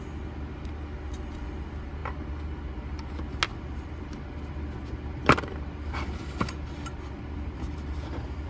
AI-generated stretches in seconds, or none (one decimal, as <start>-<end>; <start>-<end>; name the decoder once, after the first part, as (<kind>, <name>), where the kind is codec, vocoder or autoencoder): 3.5-8.5 (vocoder, BigVGAN v2)